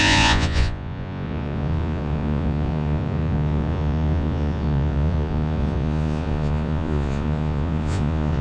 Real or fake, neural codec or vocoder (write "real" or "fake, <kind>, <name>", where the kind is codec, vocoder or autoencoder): fake, vocoder, Vocos